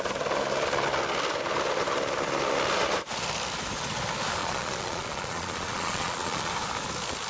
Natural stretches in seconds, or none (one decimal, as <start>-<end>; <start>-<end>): 0.0-4.4; 6.5-7.3